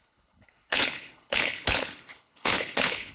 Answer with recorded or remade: remade